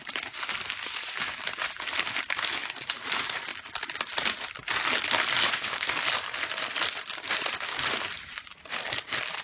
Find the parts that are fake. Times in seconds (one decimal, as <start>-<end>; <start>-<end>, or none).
5.4-6.0